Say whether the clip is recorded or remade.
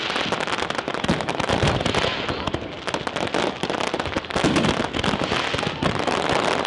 recorded